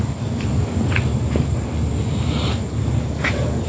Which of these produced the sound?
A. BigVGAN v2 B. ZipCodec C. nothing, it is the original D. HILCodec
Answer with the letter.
C